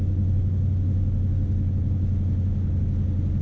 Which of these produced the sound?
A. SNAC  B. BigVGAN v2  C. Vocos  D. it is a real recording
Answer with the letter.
D